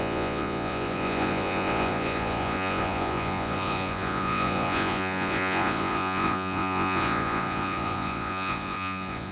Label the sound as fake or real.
fake